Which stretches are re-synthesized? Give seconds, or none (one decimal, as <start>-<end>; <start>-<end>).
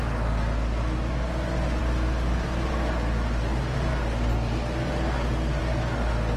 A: none